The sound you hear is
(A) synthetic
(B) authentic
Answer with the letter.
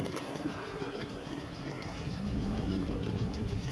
A